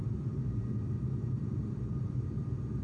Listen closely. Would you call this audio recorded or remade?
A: recorded